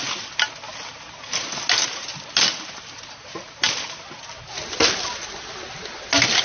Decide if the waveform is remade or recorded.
recorded